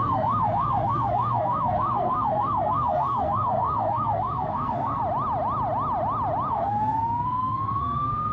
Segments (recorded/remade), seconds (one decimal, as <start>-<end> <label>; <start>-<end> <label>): 0.0-5.0 remade; 5.0-6.5 recorded; 6.5-8.3 remade